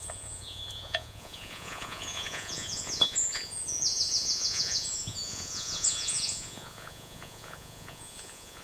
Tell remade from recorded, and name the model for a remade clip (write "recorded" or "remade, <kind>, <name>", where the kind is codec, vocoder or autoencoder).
remade, vocoder, Vocos